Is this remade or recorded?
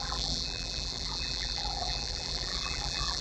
remade